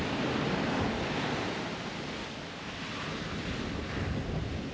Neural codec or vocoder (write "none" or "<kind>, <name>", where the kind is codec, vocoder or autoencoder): none